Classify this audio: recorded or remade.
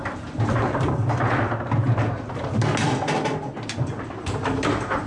recorded